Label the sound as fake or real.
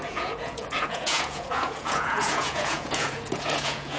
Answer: fake